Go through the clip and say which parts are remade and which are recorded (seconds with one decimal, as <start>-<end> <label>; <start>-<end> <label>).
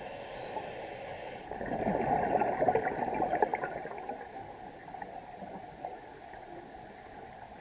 0.0-7.6 recorded